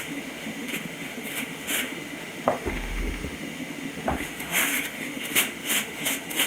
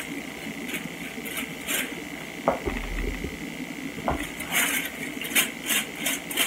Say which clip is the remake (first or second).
first